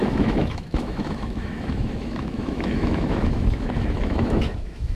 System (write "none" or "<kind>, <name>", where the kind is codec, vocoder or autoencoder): autoencoder, DAC-VAE